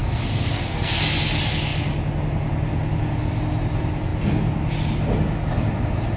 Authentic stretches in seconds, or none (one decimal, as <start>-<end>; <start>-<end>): 1.0-6.2

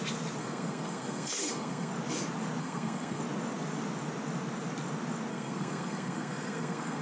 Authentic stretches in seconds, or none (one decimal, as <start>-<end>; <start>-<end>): 0.0-0.4; 1.9-2.6; 3.2-5.3

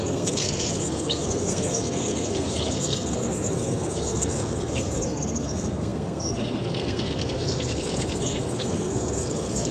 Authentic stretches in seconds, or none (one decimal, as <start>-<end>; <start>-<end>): none